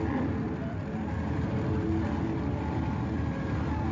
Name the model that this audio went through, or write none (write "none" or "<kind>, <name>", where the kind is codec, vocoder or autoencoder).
none